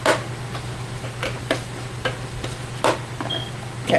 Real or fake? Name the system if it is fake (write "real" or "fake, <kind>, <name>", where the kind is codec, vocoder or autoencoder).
real